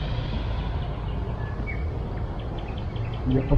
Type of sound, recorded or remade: recorded